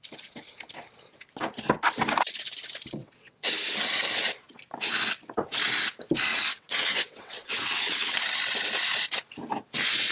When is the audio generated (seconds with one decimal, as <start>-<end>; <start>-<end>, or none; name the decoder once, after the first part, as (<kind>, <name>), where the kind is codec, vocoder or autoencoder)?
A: 3.0-3.5 (vocoder, WaveNeXt); 6.3-8.2

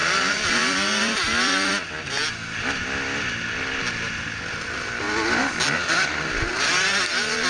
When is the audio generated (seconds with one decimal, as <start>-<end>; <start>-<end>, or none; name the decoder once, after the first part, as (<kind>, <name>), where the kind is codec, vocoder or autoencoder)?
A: 0.0-1.7 (vocoder, BigVGAN v2)

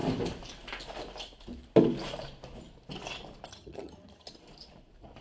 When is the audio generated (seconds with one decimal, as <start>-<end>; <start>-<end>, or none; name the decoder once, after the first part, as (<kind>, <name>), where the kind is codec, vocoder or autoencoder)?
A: 3.5-4.3 (vocoder, HiFi-GAN)

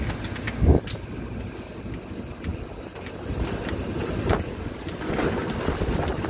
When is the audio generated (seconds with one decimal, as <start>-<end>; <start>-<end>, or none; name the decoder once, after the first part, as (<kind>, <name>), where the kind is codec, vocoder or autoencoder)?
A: none

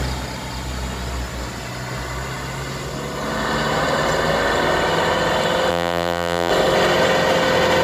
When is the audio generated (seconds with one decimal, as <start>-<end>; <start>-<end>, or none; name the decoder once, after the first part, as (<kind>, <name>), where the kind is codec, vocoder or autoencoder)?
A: 5.7-6.5 (vocoder, BigVGAN v2)

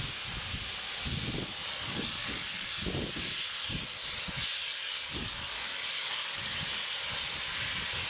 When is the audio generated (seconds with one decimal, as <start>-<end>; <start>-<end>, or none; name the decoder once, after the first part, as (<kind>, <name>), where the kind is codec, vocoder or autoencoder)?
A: 1.6-2.8 (codec, DAC); 4.6-6.7